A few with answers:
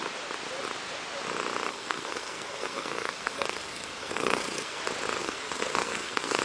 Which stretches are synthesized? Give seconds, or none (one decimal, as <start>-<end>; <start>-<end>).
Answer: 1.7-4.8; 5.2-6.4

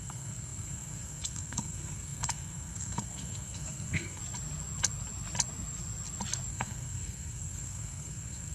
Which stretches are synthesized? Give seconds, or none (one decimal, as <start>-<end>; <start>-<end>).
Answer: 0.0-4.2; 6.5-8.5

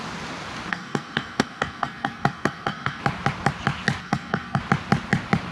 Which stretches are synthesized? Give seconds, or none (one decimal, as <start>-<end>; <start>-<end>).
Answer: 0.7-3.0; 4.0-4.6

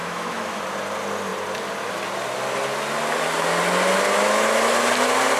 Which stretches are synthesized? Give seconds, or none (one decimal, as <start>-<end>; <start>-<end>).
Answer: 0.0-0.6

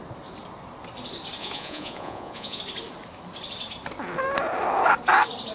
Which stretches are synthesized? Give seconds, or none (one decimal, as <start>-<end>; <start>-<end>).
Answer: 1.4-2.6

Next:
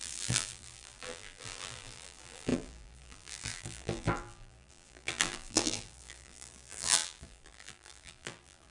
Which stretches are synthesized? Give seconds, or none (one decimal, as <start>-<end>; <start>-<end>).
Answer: 0.0-8.7